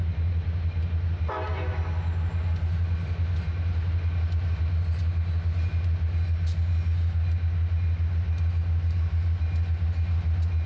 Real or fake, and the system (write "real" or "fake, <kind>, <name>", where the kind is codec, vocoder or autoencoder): real